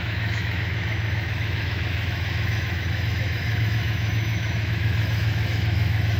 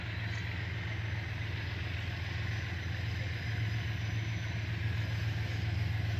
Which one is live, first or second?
second